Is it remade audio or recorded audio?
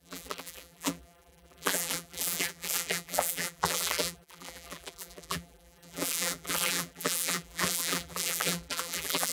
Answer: remade